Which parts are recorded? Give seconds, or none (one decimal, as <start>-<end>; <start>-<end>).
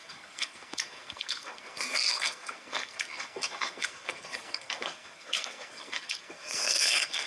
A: none